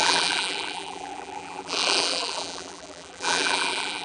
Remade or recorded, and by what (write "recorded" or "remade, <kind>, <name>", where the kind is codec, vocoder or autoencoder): remade, vocoder, BigVGAN v2